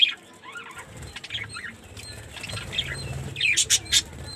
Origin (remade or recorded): recorded